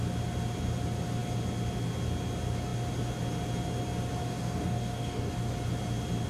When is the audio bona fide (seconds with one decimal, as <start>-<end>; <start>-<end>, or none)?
0.0-4.2; 5.3-6.3